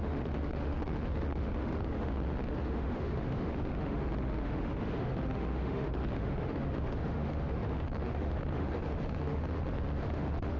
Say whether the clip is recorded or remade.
remade